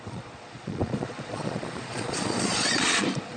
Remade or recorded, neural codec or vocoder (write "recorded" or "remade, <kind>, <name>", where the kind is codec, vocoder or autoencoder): remade, vocoder, Vocos